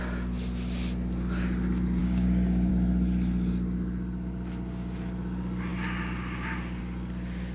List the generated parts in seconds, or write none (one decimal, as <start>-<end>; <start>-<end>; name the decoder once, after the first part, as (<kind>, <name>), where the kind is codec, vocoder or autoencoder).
2.0-2.7 (codec, DAC)